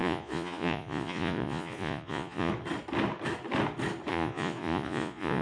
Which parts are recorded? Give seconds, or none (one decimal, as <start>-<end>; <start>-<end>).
2.5-4.1